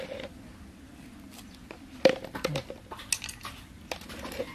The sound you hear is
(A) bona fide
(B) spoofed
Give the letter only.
A